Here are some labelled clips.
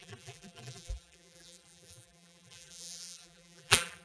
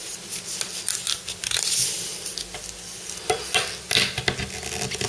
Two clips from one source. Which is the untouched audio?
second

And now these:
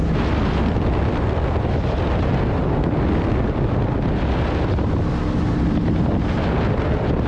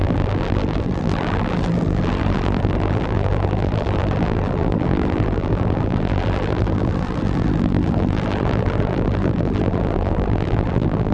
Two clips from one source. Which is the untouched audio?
first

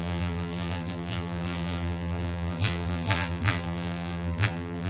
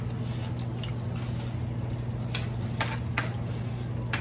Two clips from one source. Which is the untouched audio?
second